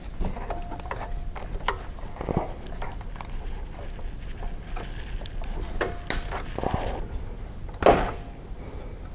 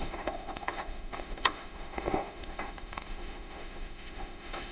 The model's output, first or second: second